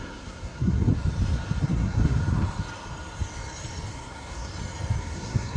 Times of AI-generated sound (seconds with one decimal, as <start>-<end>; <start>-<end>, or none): 0.0-0.9; 1.6-2.2; 3.9-4.5; 5.0-5.6